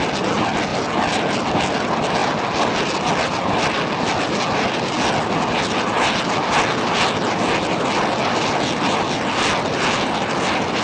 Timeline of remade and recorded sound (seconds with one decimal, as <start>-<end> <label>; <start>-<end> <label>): 0.0-10.8 recorded